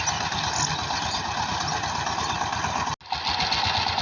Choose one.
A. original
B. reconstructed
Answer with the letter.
A